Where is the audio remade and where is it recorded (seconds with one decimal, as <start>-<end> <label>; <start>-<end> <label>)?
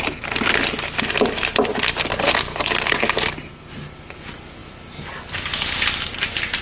0.0-6.6 recorded